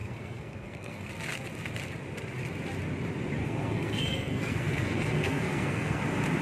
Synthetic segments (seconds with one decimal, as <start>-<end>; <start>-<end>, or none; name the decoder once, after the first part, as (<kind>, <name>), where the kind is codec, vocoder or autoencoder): 0.0-1.1 (codec, SNAC); 3.4-6.0